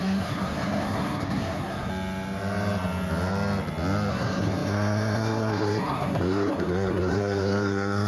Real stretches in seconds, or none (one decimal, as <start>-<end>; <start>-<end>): 1.9-4.1

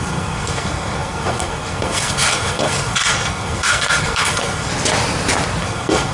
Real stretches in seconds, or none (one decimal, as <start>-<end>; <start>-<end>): 4.7-5.6

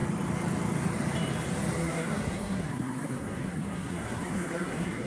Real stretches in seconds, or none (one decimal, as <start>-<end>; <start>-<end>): 0.0-1.8

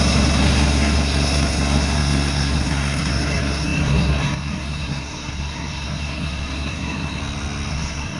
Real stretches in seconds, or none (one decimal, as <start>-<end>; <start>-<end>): 7.2-7.7

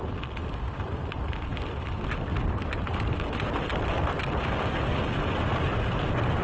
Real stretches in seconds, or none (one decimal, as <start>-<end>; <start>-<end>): 0.0-6.4

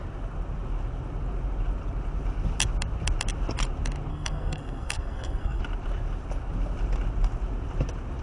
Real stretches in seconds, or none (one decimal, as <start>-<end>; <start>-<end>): 0.0-4.1; 5.6-8.2

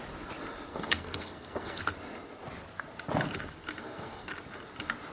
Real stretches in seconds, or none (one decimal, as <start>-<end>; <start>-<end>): 0.0-0.7; 1.8-3.8; 4.3-5.1

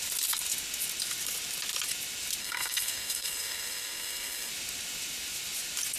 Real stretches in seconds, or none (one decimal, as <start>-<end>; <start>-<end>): 0.0-2.4; 4.5-6.0